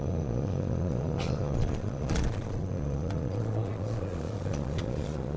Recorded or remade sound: remade